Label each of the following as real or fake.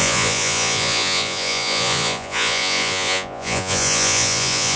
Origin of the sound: fake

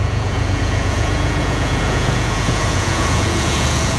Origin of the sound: fake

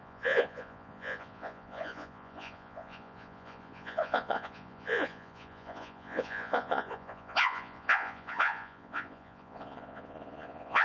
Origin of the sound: fake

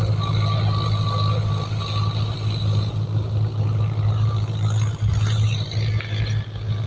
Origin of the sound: real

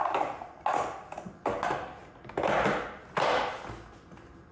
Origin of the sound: real